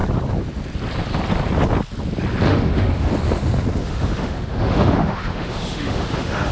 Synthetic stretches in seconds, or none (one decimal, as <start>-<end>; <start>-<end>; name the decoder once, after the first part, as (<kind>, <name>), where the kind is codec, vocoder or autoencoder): 2.5-3.1 (autoencoder, DAC-VAE); 3.8-6.5